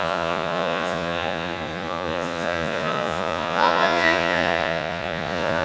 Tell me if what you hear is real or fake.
fake